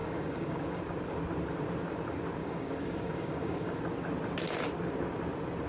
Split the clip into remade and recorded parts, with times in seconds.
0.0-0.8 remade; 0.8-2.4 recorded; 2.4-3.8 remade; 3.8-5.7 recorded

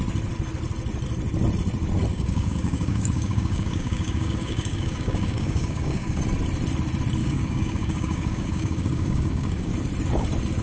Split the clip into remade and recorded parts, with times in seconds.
0.0-2.1 recorded; 2.1-6.2 remade; 6.2-7.2 recorded; 7.2-9.7 remade; 9.7-10.6 recorded

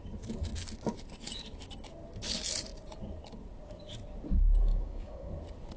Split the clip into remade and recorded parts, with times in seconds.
0.0-4.7 recorded; 4.7-5.3 remade; 5.3-5.8 recorded